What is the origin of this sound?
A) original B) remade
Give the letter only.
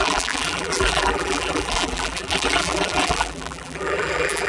B